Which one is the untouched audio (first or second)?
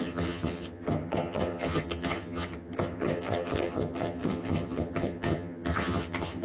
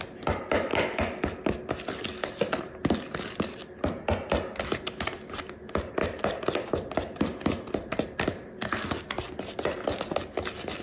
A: second